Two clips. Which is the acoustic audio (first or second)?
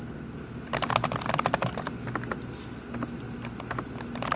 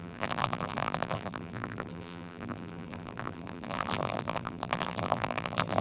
first